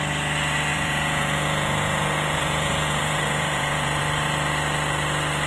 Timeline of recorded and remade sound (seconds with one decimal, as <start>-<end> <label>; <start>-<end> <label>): 0.0-0.7 recorded; 0.7-4.0 remade; 4.0-5.5 recorded